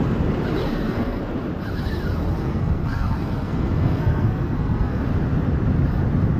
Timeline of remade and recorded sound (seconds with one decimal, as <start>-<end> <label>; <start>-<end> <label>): 0.0-0.6 recorded; 0.6-1.2 remade; 1.2-2.2 recorded; 2.2-5.0 remade; 5.0-6.4 recorded